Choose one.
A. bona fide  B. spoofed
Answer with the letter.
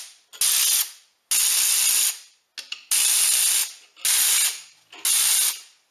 A